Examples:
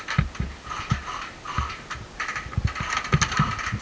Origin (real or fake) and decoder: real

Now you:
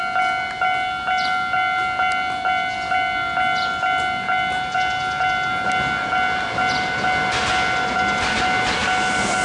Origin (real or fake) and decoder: real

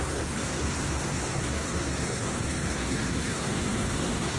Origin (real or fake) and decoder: fake, codec, SNAC